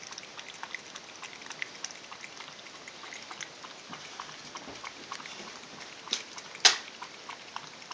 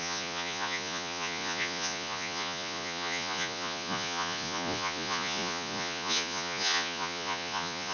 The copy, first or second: second